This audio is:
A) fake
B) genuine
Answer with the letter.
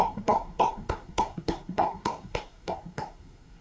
A